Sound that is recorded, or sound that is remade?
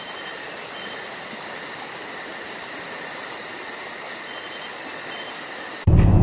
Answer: recorded